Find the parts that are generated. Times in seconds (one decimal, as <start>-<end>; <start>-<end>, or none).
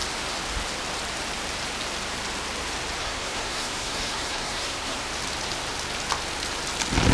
3.0-5.1